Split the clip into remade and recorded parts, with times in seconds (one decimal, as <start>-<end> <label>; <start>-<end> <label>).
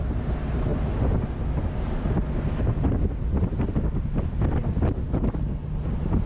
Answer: 0.0-6.3 recorded